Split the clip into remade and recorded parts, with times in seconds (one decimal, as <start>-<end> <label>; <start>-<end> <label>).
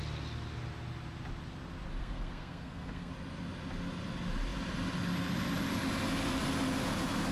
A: 0.0-2.0 recorded; 2.0-3.1 remade; 3.1-7.3 recorded